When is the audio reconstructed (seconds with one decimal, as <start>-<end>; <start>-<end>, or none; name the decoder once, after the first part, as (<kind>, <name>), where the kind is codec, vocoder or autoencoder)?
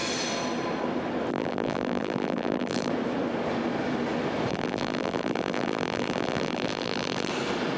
1.3-2.9 (vocoder, BigVGAN v2); 4.5-7.3